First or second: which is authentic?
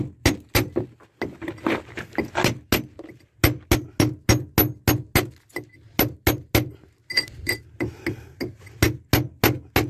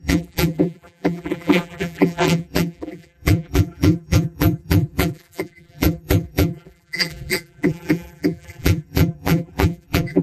first